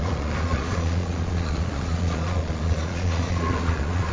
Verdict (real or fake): fake